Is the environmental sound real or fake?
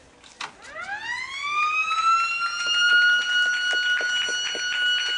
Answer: real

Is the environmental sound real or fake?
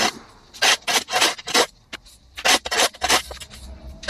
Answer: real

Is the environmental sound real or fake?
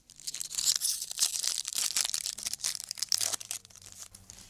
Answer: fake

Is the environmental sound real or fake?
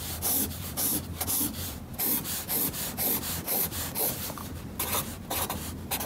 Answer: fake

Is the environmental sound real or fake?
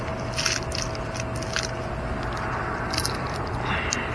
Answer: real